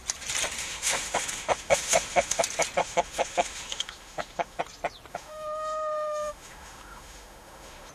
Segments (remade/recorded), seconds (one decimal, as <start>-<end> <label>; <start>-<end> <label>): 0.0-0.6 recorded; 0.6-2.4 remade; 2.4-2.8 recorded; 2.8-4.6 remade; 4.6-5.1 recorded; 5.1-7.9 remade